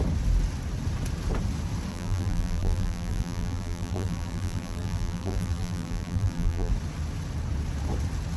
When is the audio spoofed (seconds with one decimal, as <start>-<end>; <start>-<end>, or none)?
1.9-6.7